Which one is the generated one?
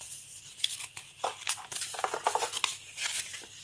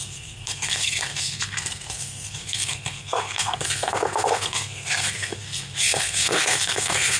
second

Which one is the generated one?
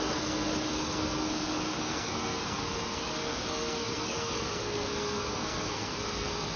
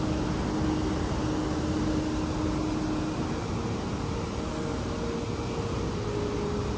first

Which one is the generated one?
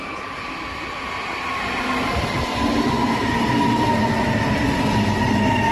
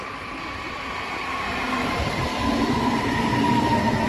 second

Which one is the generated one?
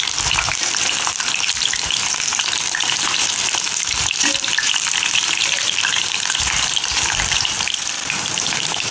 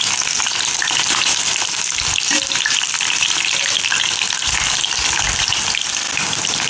first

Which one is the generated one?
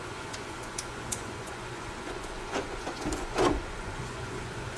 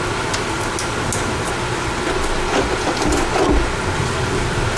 first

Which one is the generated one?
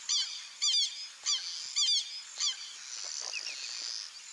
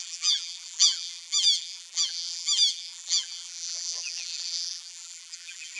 second